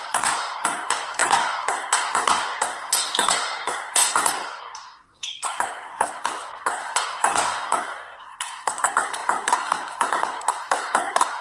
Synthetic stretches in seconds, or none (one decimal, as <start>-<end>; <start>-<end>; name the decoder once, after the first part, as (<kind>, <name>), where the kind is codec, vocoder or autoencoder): 0.0-11.4 (codec, SNAC)